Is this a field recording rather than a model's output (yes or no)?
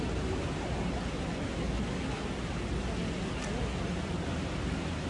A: yes